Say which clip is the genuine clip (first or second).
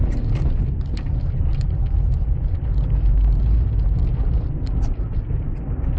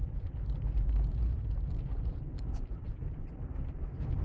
first